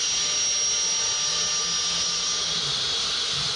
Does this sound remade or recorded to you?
recorded